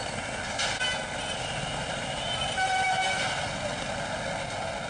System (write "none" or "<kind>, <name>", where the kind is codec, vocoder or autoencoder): none